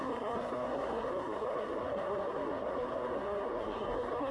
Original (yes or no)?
no